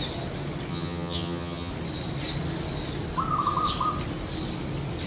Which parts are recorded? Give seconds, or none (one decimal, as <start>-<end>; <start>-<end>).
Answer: 0.0-0.7; 1.7-5.1